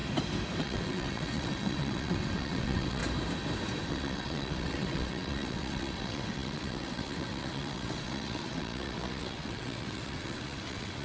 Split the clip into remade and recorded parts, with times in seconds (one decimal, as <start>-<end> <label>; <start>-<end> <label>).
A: 0.0-0.6 recorded; 0.6-3.0 remade; 3.0-3.9 recorded; 3.9-11.0 remade